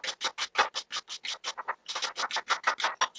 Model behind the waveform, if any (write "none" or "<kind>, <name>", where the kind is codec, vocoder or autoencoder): none